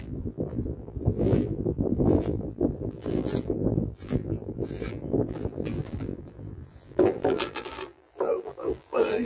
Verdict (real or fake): fake